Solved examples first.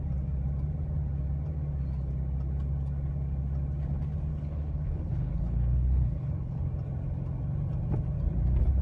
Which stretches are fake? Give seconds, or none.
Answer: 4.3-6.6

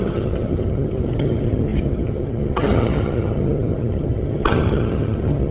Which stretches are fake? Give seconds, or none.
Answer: 0.0-5.5

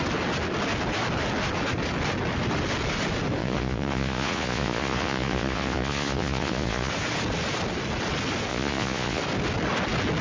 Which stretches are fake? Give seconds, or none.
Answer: 3.4-6.9; 8.5-9.2

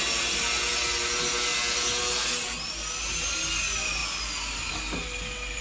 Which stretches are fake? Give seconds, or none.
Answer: none

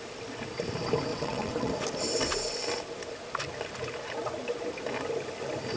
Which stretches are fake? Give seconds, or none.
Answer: 1.1-1.7

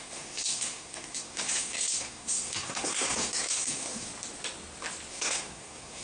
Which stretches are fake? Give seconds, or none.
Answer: 0.0-4.1; 5.1-6.0